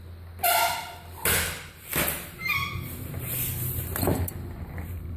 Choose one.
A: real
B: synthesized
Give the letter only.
B